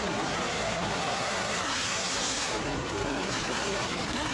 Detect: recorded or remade remade